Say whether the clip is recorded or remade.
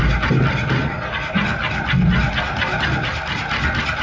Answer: recorded